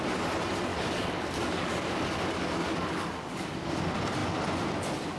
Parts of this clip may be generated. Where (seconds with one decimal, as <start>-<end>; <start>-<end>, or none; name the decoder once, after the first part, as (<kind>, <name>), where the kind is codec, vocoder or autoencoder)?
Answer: 0.7-3.8 (codec, DAC)